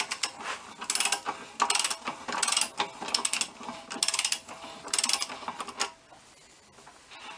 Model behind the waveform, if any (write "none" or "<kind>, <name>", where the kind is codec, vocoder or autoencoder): none